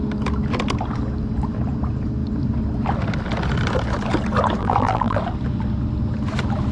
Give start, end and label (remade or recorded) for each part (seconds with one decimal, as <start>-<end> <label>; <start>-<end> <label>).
0.0-4.6 recorded; 4.6-5.2 remade; 5.2-6.7 recorded